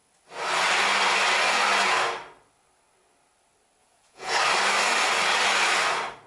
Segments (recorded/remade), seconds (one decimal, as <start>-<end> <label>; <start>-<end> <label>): 0.0-3.8 recorded; 3.8-4.4 remade; 4.4-6.3 recorded